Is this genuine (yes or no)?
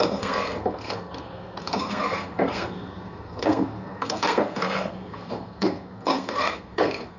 no